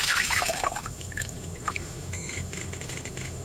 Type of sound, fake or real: fake